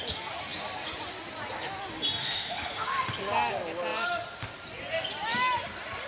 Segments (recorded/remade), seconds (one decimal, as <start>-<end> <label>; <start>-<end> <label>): 0.0-2.2 recorded; 2.2-3.1 remade; 3.1-6.1 recorded